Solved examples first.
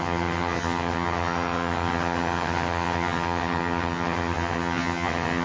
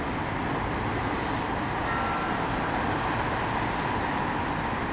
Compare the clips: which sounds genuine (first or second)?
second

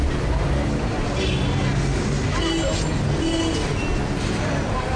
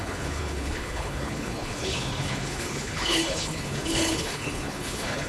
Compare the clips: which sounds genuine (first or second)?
first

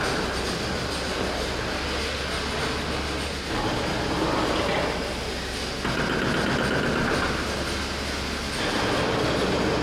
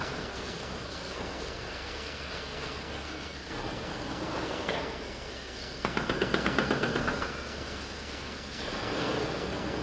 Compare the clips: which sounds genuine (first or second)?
first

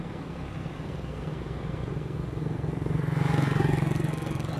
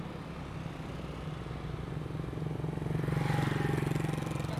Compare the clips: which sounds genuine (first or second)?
second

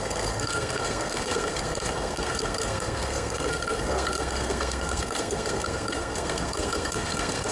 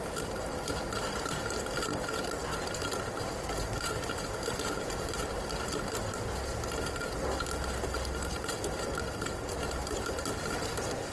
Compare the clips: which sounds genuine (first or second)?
second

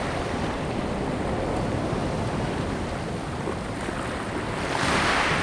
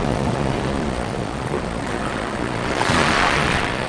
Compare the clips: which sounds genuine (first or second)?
first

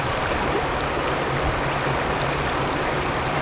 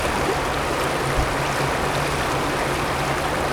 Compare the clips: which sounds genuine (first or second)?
second